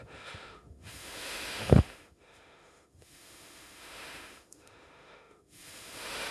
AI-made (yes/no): yes